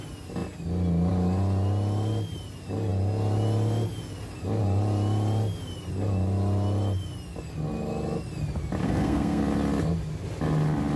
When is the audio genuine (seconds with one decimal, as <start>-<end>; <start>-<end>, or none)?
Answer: 0.0-8.8; 9.4-11.0